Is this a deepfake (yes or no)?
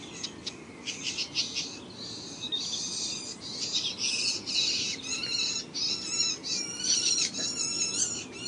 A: no